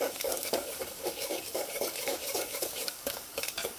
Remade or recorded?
remade